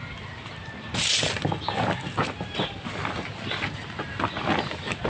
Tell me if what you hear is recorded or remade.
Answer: recorded